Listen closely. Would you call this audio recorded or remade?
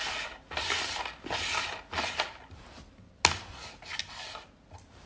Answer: recorded